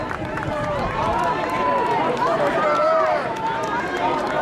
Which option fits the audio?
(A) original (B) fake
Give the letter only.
B